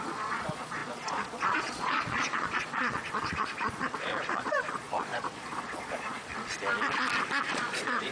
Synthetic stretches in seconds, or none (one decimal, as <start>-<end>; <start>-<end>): 0.0-6.3; 7.5-8.1